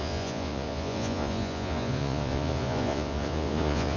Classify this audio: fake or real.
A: fake